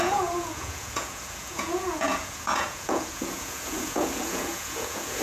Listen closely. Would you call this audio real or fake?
fake